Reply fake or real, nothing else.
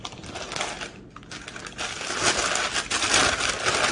real